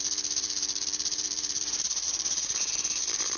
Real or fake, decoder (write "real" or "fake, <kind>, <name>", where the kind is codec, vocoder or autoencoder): fake, vocoder, BigVGAN v2